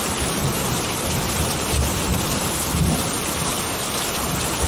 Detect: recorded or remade remade